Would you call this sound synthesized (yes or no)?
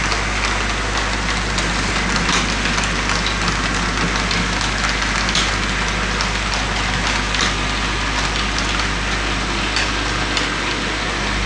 no